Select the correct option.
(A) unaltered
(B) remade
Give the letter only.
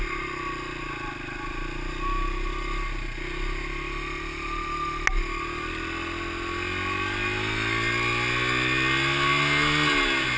A